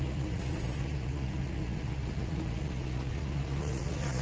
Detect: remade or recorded remade